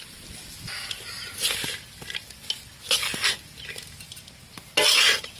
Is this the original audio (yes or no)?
yes